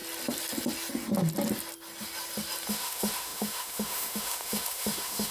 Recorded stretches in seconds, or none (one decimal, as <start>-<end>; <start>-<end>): 0.0-2.7